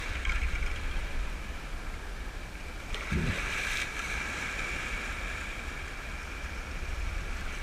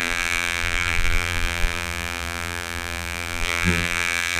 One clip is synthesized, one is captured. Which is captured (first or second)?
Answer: first